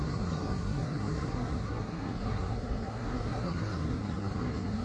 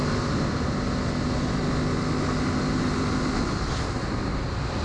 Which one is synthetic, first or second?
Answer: first